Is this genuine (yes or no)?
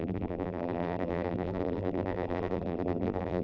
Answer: no